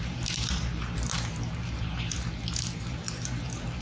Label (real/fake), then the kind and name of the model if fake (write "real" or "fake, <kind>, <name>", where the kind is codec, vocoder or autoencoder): fake, vocoder, BigVGAN v2